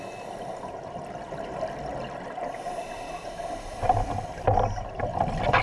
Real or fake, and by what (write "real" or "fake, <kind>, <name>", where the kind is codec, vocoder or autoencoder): real